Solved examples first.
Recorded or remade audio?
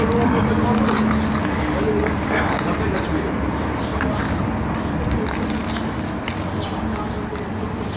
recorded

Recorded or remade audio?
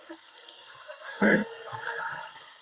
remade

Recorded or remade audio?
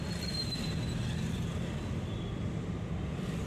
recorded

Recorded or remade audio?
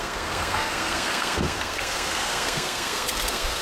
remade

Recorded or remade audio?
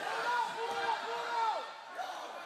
recorded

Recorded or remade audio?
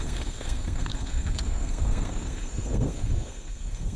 remade